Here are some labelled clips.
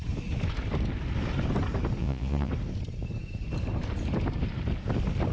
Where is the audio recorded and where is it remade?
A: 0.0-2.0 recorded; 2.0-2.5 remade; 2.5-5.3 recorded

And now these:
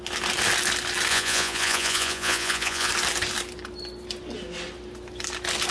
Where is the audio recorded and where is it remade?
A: 0.0-1.1 recorded; 1.1-2.9 remade; 2.9-5.7 recorded

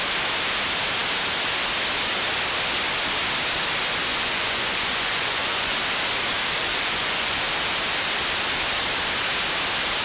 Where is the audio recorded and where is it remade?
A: 0.0-4.1 recorded; 4.1-5.8 remade; 5.8-6.7 recorded; 6.7-7.4 remade; 7.4-10.0 recorded

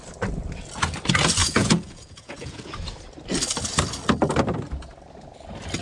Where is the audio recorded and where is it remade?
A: 0.0-1.4 recorded; 1.4-2.7 remade; 2.7-5.8 recorded

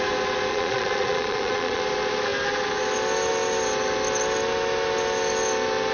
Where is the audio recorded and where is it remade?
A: 0.0-0.5 recorded; 0.5-1.8 remade; 1.8-5.9 recorded

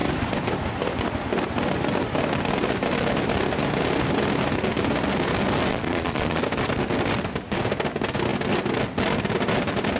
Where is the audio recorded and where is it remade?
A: 0.0-5.7 recorded; 5.7-6.4 remade; 6.4-10.0 recorded

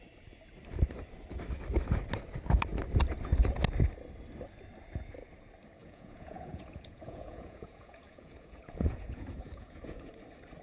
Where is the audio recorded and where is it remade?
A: 0.0-5.8 recorded; 5.8-10.1 remade; 10.1-10.6 recorded